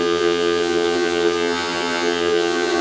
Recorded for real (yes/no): no